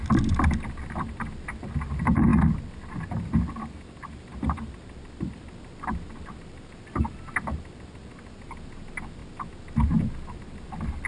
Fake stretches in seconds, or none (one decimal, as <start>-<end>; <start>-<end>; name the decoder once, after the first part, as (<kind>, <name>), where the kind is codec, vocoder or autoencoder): none